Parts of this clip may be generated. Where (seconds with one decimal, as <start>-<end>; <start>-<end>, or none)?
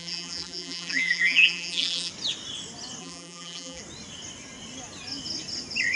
0.0-2.1; 3.0-3.8